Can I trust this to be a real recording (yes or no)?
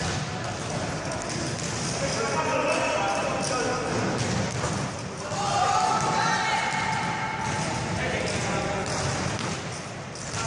yes